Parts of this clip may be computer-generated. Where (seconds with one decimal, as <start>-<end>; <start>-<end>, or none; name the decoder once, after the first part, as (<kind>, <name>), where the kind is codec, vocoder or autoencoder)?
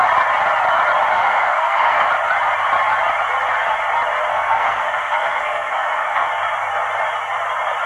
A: 1.1-2.1 (codec, SNAC); 4.3-6.3